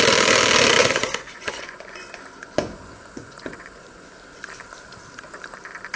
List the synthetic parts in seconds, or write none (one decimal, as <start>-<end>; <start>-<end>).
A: 0.8-4.1